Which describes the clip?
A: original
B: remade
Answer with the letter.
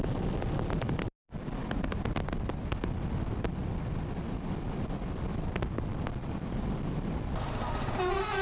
A